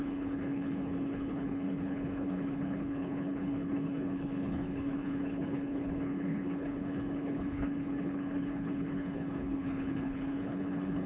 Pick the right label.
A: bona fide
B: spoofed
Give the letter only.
B